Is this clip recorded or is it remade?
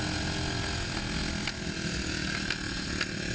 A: recorded